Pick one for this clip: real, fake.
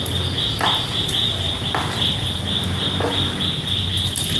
real